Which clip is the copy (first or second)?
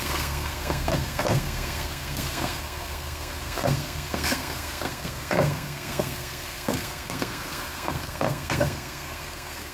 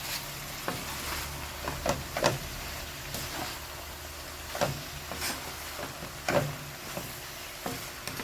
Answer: first